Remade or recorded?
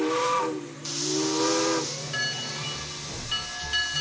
recorded